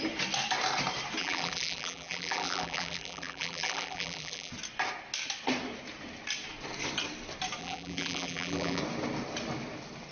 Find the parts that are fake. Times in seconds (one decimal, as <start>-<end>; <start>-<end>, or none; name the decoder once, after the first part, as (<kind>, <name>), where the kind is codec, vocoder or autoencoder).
1.2-4.5 (vocoder, BigVGAN v2); 7.6-8.8